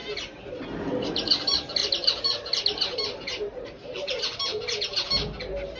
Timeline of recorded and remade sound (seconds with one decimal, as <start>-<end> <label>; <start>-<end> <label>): 0.0-1.8 recorded; 1.8-5.1 remade; 5.1-5.8 recorded